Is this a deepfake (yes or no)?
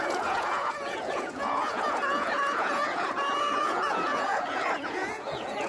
yes